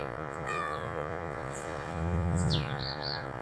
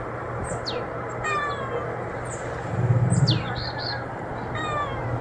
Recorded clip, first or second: second